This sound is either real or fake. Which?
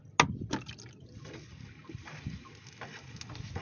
real